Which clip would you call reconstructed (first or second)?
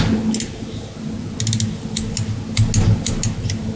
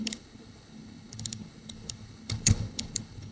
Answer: second